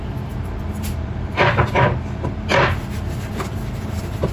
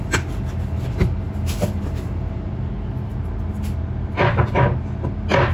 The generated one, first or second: first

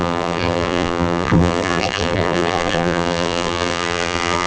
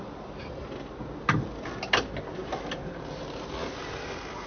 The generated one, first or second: first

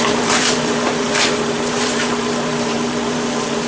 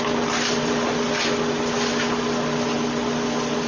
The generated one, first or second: first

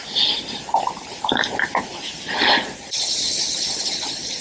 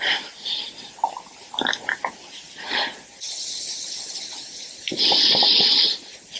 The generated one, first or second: first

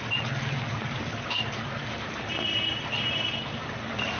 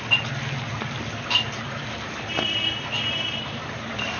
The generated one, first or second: first